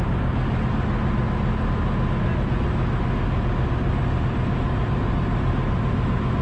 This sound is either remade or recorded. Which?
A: recorded